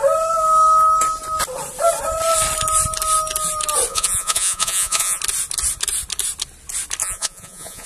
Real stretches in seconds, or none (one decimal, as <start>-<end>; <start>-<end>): 0.0-3.9; 5.2-7.0